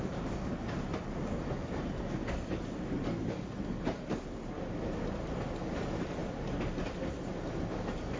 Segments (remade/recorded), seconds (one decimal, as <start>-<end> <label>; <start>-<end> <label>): 0.0-0.9 recorded; 0.9-2.0 remade; 2.0-8.2 recorded